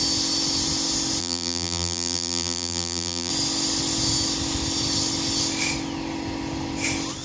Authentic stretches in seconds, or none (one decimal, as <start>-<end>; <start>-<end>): 0.0-1.2; 3.3-7.2